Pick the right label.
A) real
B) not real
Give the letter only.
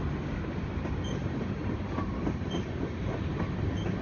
A